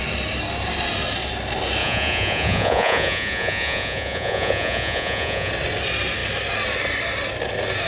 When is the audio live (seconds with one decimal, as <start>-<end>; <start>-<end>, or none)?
0.0-1.8; 5.5-7.9